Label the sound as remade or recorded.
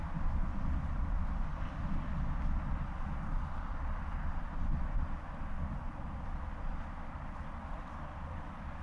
remade